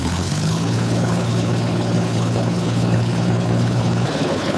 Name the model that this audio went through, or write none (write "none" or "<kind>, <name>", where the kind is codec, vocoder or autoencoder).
codec, HILCodec